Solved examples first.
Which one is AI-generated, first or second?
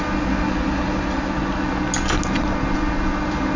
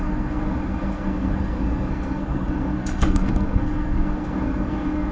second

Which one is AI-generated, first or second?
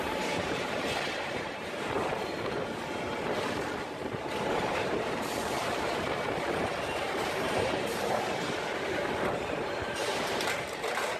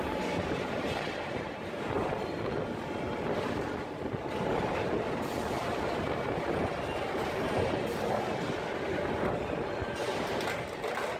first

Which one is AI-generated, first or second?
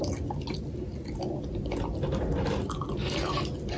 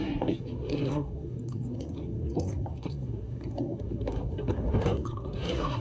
second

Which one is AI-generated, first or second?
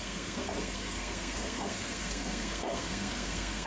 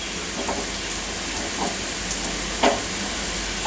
first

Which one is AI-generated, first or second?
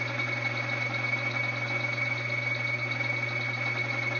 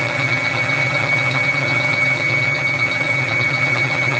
second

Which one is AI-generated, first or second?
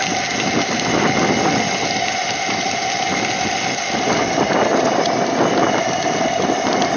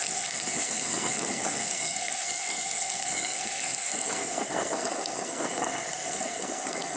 second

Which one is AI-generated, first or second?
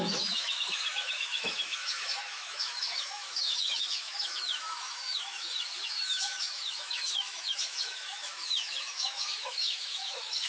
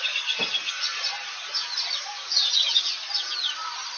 first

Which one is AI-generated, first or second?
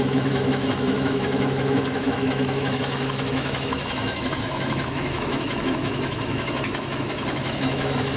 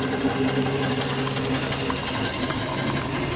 first